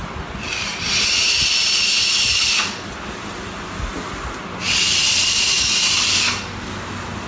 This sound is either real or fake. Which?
real